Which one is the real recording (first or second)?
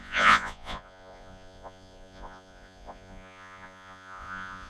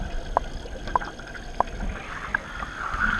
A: second